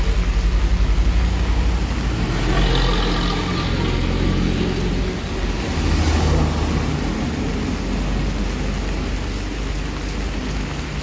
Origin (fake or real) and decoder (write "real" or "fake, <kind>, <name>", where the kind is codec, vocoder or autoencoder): real